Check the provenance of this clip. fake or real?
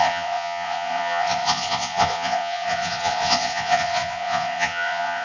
fake